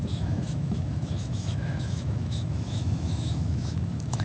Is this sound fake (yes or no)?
yes